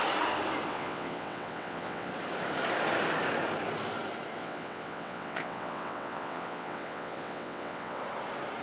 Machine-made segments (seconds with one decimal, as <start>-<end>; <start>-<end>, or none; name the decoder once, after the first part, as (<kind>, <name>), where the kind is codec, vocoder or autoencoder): 0.7-2.1 (vocoder, WaveNeXt); 4.4-8.0